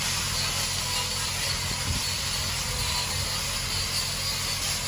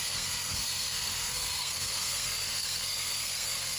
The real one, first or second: first